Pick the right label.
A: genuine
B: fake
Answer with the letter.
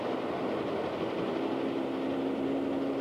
A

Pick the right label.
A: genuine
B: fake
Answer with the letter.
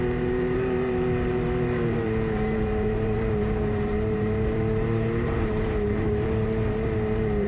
B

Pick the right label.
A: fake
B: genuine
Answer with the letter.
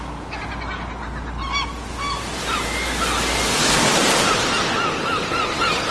B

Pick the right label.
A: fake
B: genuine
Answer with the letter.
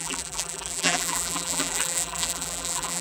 A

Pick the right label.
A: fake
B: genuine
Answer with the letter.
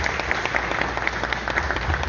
B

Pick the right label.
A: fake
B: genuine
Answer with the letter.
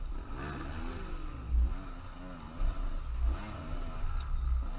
B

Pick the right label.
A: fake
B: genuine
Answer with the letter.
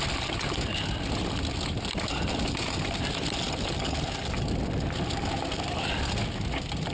B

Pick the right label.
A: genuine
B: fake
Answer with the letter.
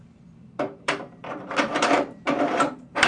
B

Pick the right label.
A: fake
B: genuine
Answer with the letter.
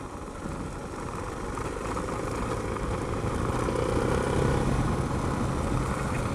B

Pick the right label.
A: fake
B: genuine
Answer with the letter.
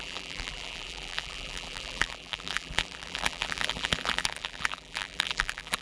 A